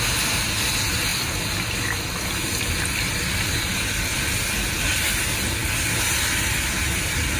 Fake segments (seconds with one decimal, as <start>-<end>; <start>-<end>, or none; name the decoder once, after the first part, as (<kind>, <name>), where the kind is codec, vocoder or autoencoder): none